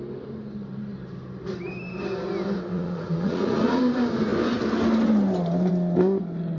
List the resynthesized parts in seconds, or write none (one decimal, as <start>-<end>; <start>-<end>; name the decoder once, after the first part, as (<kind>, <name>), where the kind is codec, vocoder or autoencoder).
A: 2.7-3.8 (vocoder, Vocos)